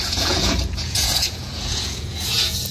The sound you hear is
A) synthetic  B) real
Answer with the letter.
A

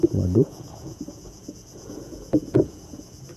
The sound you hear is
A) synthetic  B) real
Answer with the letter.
A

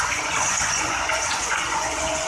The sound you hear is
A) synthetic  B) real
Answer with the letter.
A